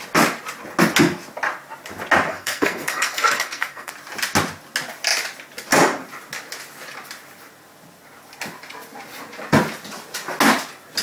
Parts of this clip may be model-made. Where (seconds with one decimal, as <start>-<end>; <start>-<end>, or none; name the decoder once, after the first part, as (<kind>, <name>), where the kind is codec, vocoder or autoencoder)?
2.3-3.9 (codec, SNAC)